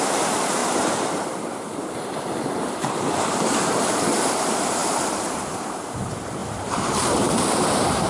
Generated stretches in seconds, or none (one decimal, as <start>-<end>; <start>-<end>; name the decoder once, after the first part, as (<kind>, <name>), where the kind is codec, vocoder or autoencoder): 0.0-8.1 (vocoder, BigVGAN v2)